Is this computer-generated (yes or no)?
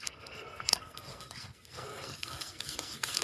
yes